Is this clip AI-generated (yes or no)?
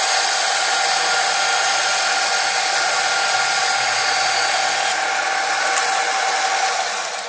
no